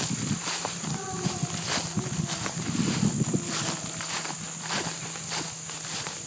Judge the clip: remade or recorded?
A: recorded